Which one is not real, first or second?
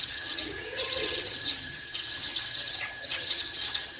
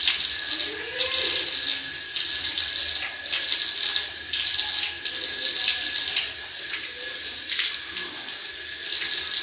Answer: first